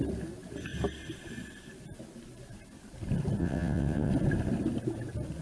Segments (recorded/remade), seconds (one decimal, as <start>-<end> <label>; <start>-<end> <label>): 0.0-3.4 recorded; 3.4-4.1 remade; 4.1-5.4 recorded